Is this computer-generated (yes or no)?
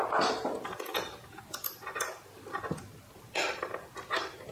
no